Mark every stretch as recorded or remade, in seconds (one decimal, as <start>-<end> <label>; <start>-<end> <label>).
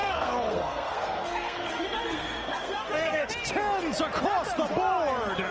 0.0-3.3 remade; 3.3-5.5 recorded